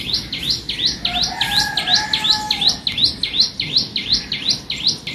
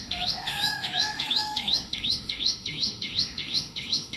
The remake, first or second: second